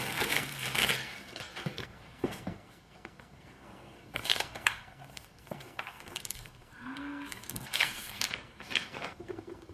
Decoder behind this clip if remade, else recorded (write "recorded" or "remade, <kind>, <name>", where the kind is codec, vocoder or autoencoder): remade, codec, SNAC